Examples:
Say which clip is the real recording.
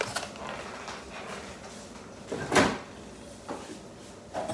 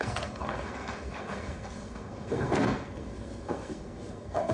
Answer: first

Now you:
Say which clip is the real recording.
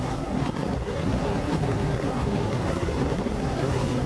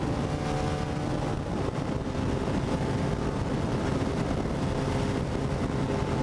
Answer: second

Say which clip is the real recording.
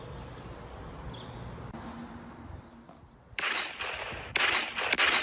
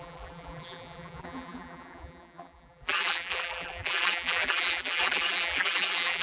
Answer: first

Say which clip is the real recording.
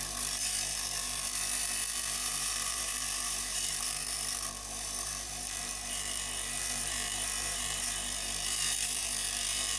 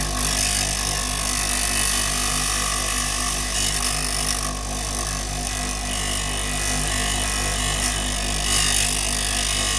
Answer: second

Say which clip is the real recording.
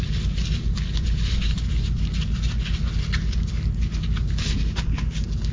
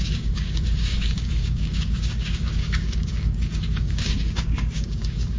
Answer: first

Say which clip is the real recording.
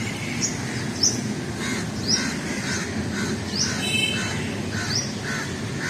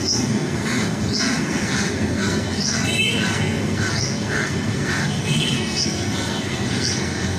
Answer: first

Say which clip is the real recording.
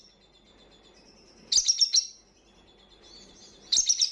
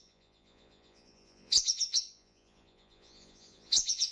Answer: first